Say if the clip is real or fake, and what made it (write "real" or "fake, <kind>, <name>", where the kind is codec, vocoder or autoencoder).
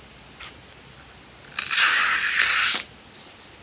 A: real